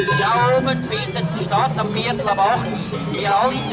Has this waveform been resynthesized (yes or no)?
no